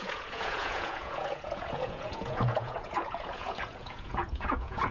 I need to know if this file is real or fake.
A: fake